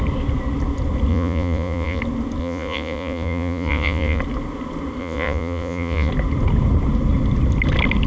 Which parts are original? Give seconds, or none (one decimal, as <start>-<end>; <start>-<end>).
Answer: 0.0-1.1; 2.0-2.4; 4.2-5.0; 6.1-8.1